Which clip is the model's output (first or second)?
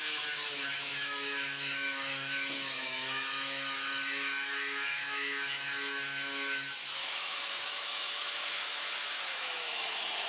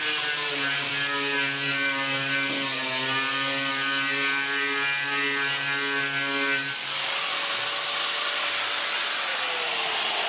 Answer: first